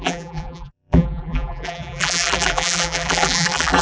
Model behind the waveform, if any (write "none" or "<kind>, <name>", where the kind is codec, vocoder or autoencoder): vocoder, BigVGAN v2